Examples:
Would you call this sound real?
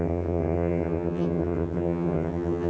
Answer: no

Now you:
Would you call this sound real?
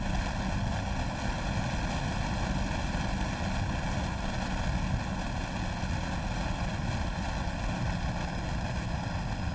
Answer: yes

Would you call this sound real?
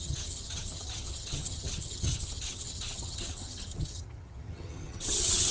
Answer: no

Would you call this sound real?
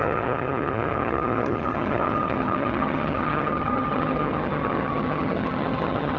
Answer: no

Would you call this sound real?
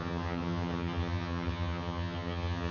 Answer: no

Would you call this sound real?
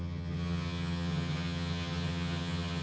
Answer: no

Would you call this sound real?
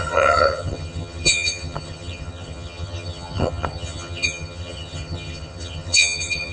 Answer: no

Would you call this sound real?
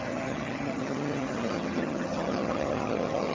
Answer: no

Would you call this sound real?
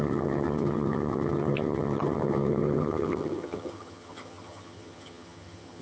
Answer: no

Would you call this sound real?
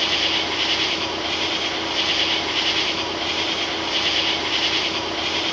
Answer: yes